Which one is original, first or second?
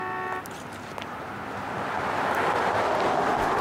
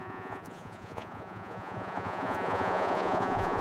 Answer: first